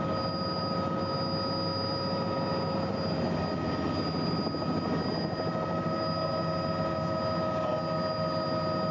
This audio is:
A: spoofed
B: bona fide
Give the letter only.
B